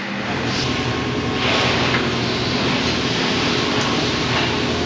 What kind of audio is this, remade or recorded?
recorded